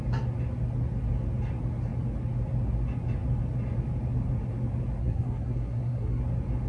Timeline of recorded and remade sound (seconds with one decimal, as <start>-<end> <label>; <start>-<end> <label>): 0.0-5.0 recorded; 5.0-6.2 remade; 6.2-6.7 recorded